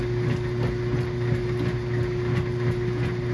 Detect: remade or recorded recorded